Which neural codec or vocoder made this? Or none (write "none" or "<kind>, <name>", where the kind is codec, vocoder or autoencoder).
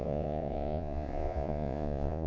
vocoder, Vocos